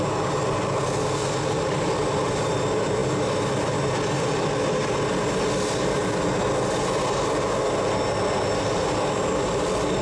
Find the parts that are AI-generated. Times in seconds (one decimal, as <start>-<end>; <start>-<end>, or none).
none